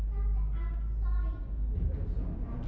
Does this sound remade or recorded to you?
recorded